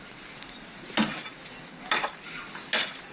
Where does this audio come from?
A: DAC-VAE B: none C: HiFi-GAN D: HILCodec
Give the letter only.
B